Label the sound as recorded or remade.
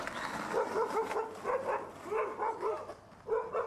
recorded